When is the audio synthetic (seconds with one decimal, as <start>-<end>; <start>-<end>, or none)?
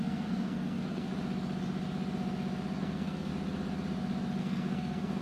0.0-1.1; 2.8-3.3; 4.4-5.2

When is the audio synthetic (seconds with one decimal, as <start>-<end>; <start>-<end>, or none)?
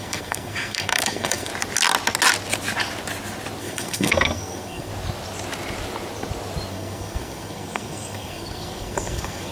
0.0-1.5; 3.6-4.9; 6.7-9.5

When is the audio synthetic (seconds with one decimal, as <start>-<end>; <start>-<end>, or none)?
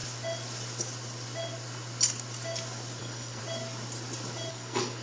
3.0-3.4; 4.5-5.0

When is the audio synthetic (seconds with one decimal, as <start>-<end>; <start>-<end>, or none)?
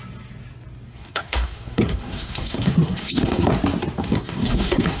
0.9-3.5; 4.0-5.0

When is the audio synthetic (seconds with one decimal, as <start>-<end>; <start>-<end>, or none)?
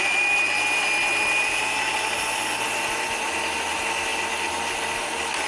none